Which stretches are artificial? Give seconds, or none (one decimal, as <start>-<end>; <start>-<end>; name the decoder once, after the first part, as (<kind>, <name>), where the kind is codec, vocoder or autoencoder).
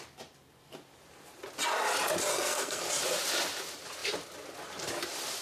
2.3-2.9 (codec, SNAC)